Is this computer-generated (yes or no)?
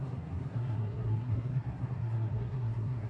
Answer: yes